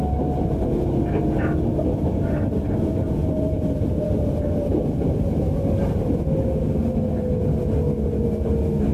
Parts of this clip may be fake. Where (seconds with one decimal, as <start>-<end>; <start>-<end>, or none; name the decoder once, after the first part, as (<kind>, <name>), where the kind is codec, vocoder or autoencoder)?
3.2-6.2 (vocoder, BigVGAN v2)

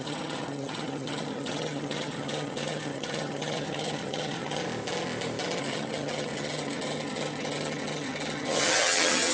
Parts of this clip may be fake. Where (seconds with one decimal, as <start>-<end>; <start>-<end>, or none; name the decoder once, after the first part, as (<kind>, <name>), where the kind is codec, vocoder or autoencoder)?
0.0-4.6 (vocoder, HiFi-GAN); 5.6-9.3